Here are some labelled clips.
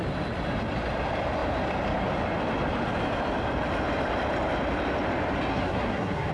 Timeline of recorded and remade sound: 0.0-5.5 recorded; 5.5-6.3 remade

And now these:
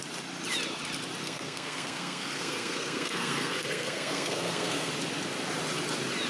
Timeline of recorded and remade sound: 0.0-1.2 recorded; 1.2-4.9 remade; 4.9-6.3 recorded

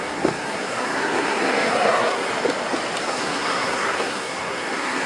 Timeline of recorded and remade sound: 0.0-2.3 remade; 2.3-3.0 recorded; 3.0-5.1 remade

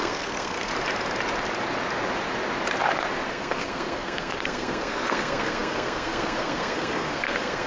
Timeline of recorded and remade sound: 0.0-0.7 remade; 0.7-3.3 recorded; 3.3-7.7 remade

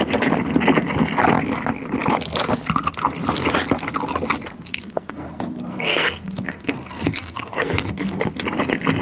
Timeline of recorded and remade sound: 0.0-4.7 recorded; 4.7-8.2 remade; 8.2-9.0 recorded